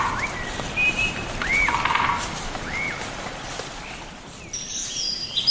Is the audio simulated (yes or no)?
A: no